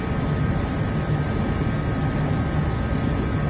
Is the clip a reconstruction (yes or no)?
no